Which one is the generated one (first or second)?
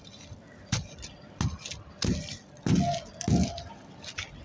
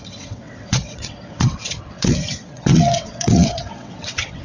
second